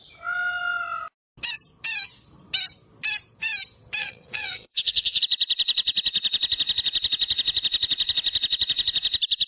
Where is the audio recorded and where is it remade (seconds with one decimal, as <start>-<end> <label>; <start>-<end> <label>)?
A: 0.0-4.0 recorded; 4.0-5.2 remade; 5.2-9.5 recorded